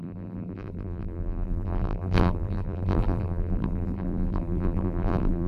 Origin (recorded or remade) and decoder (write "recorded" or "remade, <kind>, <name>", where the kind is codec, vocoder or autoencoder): remade, vocoder, BigVGAN v2